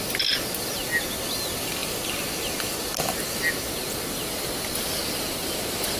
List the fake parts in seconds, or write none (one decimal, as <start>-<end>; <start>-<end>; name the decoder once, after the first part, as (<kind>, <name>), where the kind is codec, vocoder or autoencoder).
none